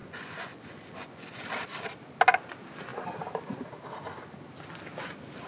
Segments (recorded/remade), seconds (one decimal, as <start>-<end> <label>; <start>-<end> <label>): 0.0-1.3 remade; 1.3-5.5 recorded